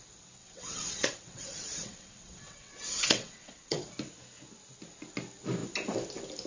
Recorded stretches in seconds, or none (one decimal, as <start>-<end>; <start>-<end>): 0.0-0.4; 3.9-6.5